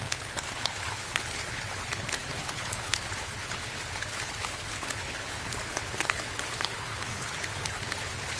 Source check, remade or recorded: remade